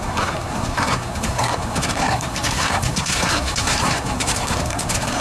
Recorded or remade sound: remade